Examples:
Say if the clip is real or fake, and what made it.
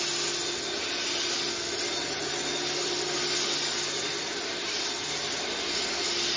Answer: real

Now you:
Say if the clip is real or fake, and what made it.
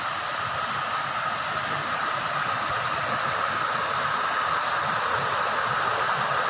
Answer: real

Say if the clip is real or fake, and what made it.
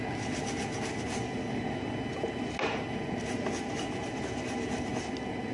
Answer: real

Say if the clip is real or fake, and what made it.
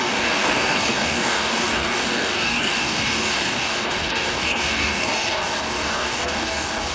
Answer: fake, codec, DAC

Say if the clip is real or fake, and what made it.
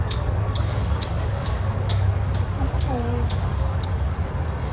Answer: fake, codec, DAC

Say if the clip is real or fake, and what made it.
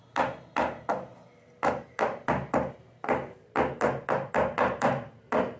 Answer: real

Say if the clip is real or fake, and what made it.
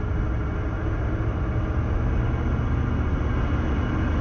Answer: real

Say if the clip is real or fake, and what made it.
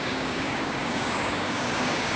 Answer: fake, codec, DAC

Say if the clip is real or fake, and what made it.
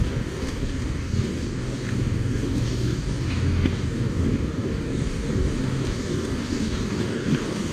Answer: fake, codec, DAC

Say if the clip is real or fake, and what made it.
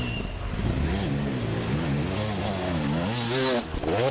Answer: real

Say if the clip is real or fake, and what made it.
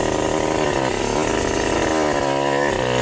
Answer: real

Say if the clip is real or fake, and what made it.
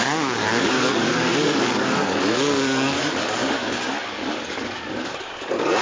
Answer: fake, codec, DAC